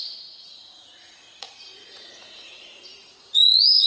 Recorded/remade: remade